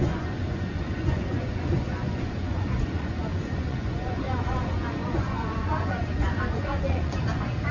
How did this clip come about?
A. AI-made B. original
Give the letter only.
A